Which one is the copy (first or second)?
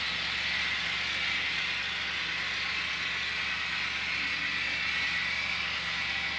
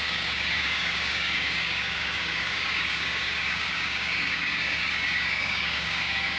second